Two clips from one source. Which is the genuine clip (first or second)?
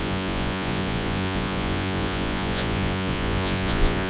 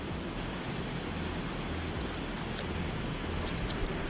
second